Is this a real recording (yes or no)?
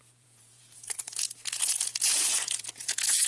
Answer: no